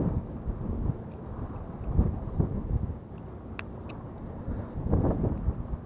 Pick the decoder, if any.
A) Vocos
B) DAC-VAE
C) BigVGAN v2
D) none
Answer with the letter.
D